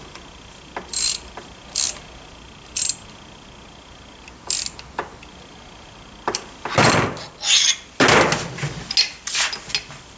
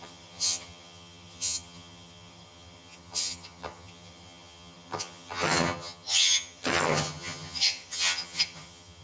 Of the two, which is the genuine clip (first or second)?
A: first